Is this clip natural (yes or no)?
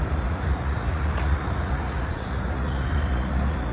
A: no